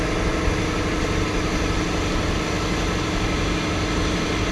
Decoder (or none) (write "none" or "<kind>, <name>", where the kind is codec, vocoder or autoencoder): none